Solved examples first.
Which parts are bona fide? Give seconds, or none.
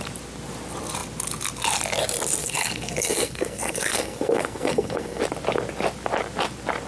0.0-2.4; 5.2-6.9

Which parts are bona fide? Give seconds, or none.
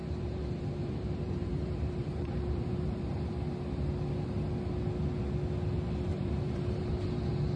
3.3-6.1; 6.9-7.6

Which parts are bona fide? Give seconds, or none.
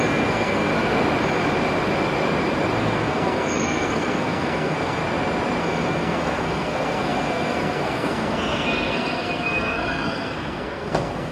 0.7-2.8; 5.0-5.6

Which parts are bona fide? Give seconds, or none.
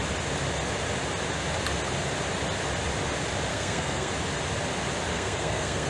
0.0-3.5; 4.1-5.1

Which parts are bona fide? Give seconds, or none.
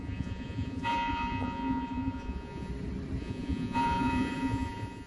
2.7-3.2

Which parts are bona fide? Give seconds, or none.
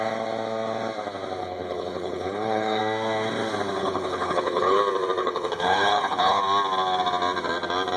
0.0-1.4; 2.8-3.8; 4.8-5.2; 6.4-8.0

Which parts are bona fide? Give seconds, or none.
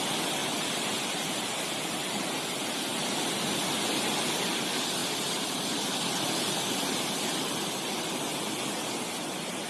0.0-0.4; 2.3-2.9; 3.5-5.0; 6.7-9.7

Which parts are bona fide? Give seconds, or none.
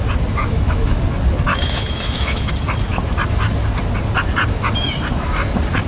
0.0-0.4; 1.0-1.5; 2.5-5.9